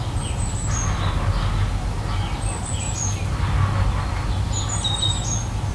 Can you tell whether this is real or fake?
real